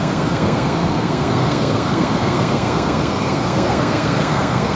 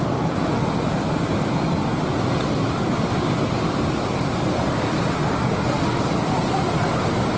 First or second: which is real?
second